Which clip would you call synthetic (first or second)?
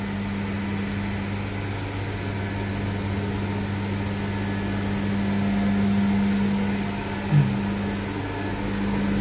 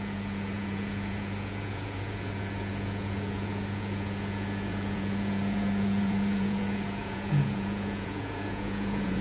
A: second